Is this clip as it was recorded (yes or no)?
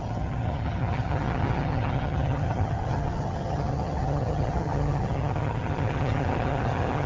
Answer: no